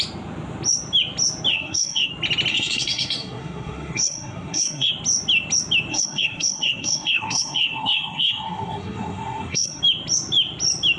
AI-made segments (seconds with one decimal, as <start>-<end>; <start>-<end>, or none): 1.5-2.1; 2.5-4.9; 5.9-9.8